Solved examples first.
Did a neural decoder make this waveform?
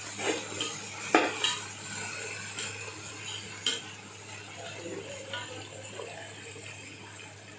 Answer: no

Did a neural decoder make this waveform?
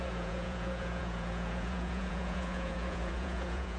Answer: yes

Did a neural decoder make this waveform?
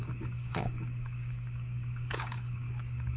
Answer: yes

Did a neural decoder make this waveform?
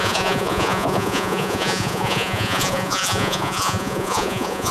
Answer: yes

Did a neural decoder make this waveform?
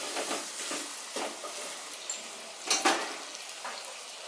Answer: no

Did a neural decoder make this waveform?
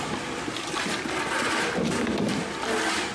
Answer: no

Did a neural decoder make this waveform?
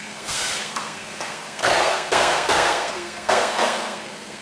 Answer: yes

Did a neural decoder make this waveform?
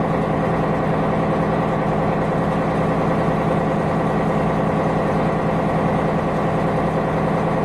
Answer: no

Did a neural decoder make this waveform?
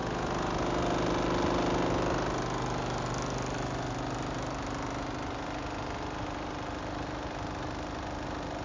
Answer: no